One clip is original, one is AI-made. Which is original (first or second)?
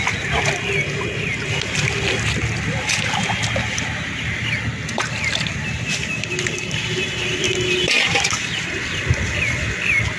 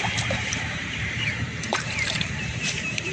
first